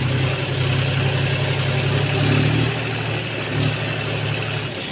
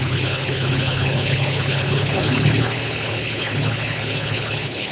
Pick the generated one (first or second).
second